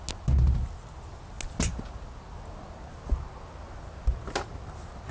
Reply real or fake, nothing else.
real